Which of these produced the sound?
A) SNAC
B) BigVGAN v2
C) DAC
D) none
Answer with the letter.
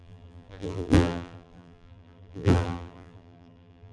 B